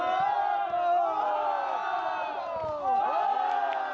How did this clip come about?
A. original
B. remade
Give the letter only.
A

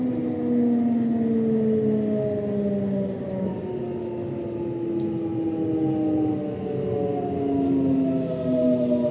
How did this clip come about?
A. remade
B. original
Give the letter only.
B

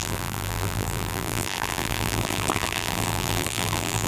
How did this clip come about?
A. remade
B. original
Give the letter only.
A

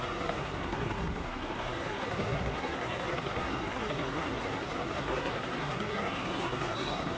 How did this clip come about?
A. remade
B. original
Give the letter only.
A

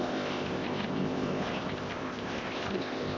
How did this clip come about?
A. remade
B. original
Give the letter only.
A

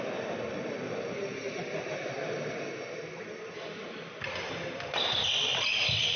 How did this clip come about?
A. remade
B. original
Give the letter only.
B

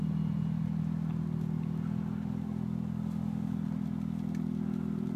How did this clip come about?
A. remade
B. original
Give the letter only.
B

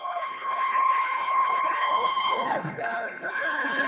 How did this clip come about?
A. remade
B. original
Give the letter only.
A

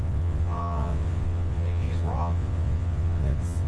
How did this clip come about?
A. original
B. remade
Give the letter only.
B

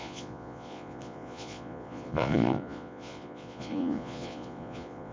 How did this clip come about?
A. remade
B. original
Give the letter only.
A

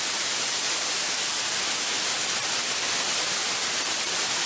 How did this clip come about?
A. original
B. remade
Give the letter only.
B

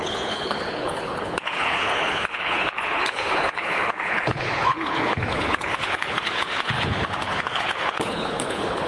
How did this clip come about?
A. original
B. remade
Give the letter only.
B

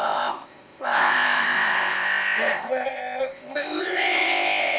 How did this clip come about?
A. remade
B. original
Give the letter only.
A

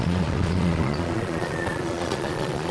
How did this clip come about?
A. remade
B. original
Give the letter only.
A